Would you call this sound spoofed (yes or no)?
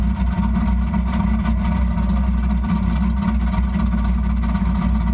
no